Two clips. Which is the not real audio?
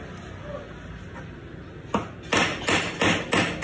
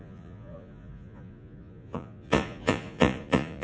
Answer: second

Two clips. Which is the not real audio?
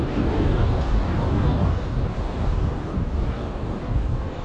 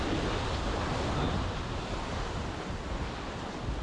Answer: first